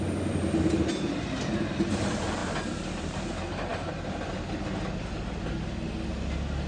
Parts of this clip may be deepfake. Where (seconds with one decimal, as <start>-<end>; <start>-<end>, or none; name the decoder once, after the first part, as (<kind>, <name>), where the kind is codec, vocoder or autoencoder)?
none